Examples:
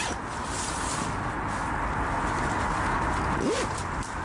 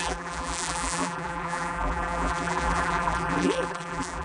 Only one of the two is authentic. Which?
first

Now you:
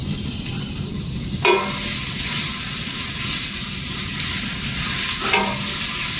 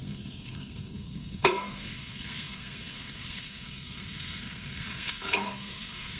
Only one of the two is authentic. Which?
first